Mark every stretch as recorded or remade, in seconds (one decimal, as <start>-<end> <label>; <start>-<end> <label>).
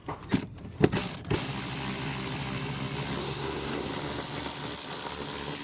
0.0-3.2 recorded; 3.2-3.9 remade; 3.9-5.6 recorded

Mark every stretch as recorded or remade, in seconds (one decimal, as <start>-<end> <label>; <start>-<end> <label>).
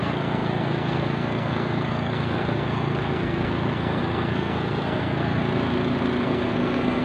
0.0-5.4 remade; 5.4-6.2 recorded; 6.2-7.0 remade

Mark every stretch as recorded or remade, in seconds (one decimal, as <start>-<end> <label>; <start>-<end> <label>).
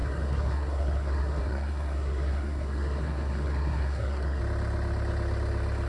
0.0-4.4 remade; 4.4-5.9 recorded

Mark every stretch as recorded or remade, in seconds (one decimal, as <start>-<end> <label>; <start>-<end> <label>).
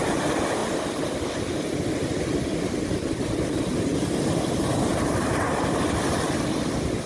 0.0-7.1 recorded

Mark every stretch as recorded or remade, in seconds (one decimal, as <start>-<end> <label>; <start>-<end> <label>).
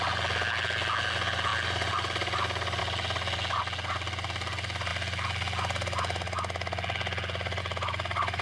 0.0-8.4 recorded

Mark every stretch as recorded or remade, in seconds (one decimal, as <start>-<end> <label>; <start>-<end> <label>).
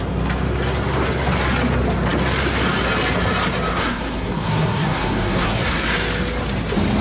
0.0-3.7 recorded; 3.7-5.9 remade; 5.9-7.0 recorded